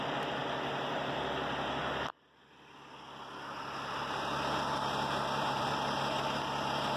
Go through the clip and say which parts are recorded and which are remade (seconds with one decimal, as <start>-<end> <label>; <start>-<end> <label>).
0.0-7.0 recorded